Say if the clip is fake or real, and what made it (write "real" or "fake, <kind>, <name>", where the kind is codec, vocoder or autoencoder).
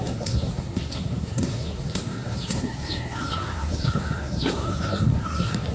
fake, codec, SNAC